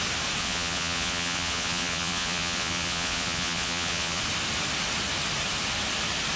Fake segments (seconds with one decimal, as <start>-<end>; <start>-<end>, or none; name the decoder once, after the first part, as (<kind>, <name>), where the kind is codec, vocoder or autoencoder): 0.4-4.2 (vocoder, Vocos)